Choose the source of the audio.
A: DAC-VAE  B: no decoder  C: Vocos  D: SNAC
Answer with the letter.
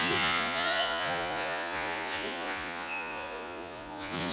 C